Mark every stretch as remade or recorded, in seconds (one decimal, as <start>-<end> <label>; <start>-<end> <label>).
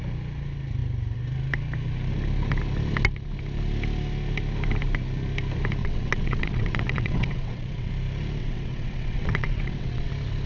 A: 0.0-5.8 recorded; 5.8-7.9 remade; 7.9-8.4 recorded; 8.4-10.1 remade; 10.1-10.5 recorded